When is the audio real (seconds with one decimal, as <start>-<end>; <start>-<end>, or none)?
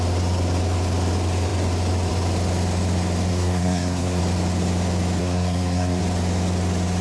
0.0-3.3; 4.2-5.2; 6.0-7.0